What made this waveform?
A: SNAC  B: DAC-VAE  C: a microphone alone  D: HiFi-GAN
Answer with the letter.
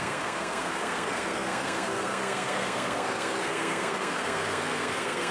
A